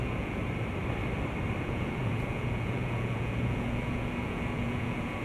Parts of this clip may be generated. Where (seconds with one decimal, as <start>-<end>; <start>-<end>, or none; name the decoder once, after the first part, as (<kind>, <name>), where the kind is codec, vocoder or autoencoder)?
0.0-0.4 (vocoder, Vocos); 1.6-5.2